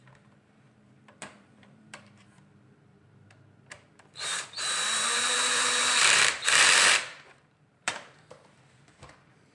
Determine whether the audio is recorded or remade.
remade